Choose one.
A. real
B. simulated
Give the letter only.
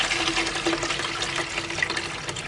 A